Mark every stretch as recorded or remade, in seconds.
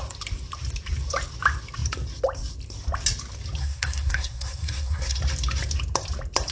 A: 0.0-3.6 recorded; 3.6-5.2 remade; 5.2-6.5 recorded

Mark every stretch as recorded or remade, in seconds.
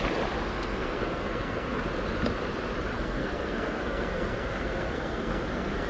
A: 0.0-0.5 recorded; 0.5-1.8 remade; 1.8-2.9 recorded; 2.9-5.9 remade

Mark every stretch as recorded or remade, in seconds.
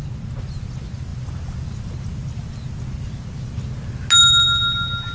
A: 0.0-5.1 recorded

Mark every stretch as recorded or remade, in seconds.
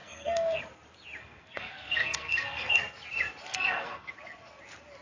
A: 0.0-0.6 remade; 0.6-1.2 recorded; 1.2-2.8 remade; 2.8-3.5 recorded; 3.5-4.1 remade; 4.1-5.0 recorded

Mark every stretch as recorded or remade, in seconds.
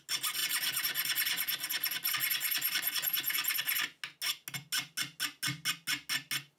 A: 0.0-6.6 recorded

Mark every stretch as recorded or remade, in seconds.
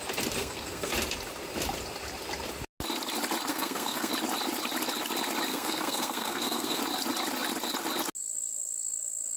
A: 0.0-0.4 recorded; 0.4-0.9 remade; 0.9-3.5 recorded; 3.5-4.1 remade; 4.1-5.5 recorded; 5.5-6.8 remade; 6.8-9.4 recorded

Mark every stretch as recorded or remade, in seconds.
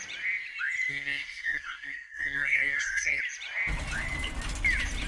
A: 0.0-0.9 recorded; 0.9-3.2 remade; 3.2-5.1 recorded